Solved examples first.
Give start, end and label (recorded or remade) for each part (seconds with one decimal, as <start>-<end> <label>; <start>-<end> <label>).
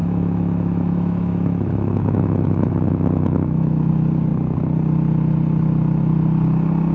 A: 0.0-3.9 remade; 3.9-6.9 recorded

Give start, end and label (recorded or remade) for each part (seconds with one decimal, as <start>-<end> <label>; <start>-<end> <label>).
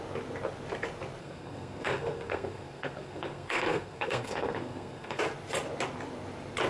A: 0.0-1.2 recorded; 1.2-5.2 remade; 5.2-6.7 recorded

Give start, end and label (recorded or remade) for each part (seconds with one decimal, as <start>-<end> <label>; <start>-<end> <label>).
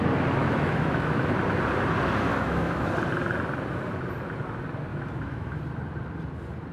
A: 0.0-0.4 recorded; 0.4-1.3 remade; 1.3-2.3 recorded; 2.3-2.9 remade; 2.9-4.9 recorded; 4.9-5.6 remade; 5.6-6.7 recorded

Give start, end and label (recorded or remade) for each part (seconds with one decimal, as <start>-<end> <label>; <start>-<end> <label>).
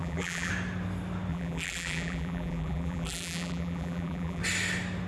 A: 0.0-0.5 remade; 0.5-1.3 recorded; 1.3-4.4 remade; 4.4-5.1 recorded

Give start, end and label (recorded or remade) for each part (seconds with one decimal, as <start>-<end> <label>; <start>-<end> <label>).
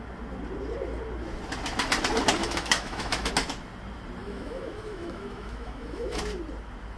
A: 0.0-2.4 recorded; 2.4-3.3 remade; 3.3-4.2 recorded; 4.2-6.2 remade; 6.2-7.0 recorded